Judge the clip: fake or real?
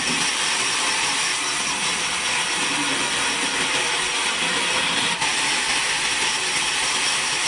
real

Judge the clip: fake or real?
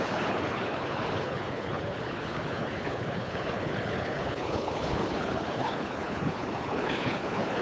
fake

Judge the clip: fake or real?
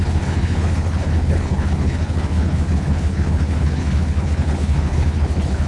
fake